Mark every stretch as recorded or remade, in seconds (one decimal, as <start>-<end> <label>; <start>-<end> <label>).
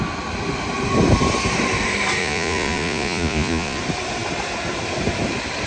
0.0-2.2 recorded; 2.2-3.8 remade; 3.8-5.7 recorded